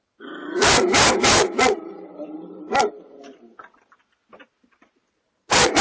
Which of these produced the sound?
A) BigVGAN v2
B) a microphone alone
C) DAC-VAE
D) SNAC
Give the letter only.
B